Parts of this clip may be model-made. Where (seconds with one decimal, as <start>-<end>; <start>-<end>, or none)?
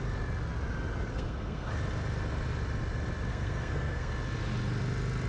1.1-1.7; 3.3-4.1